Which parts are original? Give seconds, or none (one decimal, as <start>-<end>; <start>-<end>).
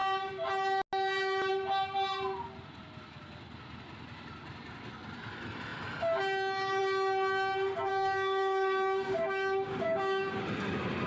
0.0-7.9; 10.4-11.1